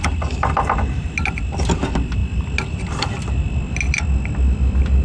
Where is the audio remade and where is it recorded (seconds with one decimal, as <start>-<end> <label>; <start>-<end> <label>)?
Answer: 0.0-5.0 recorded